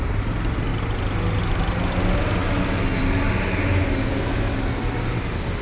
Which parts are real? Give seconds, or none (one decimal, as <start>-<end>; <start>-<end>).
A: 0.0-5.6